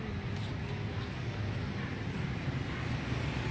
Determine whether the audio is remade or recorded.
recorded